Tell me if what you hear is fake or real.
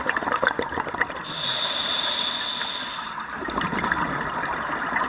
real